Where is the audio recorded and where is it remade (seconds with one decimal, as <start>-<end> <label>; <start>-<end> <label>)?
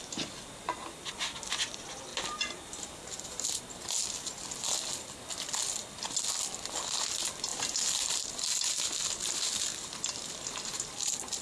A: 0.0-2.1 recorded; 2.1-3.6 remade; 3.6-7.5 recorded; 7.5-8.9 remade; 8.9-11.4 recorded